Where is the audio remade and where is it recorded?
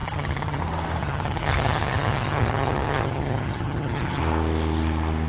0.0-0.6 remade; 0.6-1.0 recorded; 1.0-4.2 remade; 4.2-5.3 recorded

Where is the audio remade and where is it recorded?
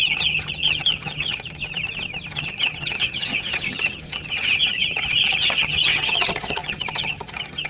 0.0-1.6 remade; 1.6-2.3 recorded; 2.3-7.7 remade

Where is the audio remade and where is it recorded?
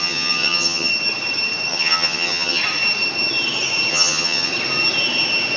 0.0-0.9 remade; 0.9-1.7 recorded; 1.7-2.6 remade; 2.6-3.9 recorded; 3.9-4.5 remade; 4.5-5.6 recorded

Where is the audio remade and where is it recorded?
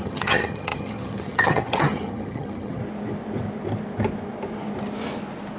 0.0-2.8 remade; 2.8-5.6 recorded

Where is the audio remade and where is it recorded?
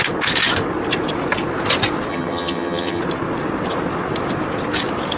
0.0-2.1 recorded; 2.1-3.0 remade; 3.0-5.2 recorded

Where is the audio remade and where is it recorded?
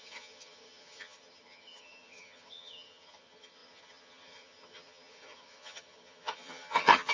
0.0-7.1 remade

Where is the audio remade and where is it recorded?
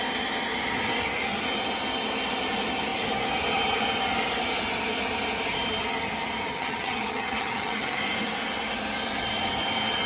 0.0-6.5 recorded; 6.5-8.0 remade; 8.0-10.1 recorded